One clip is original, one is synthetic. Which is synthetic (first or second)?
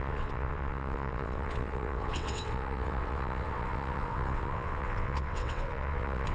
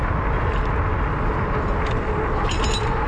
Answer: first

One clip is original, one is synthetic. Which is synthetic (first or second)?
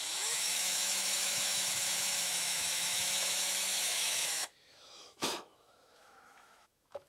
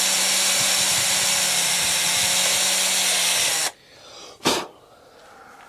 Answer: first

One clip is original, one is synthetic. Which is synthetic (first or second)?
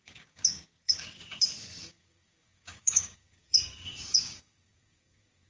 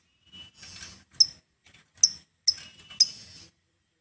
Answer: first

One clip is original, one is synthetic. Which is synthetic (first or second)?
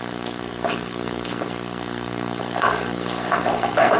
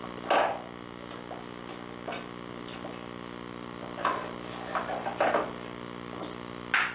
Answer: first